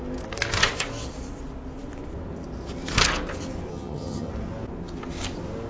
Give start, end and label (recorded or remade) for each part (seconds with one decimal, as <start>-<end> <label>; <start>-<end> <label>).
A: 0.0-3.7 recorded; 3.7-4.3 remade; 4.3-5.7 recorded